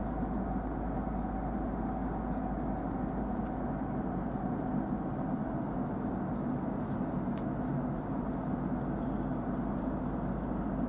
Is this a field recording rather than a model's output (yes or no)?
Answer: yes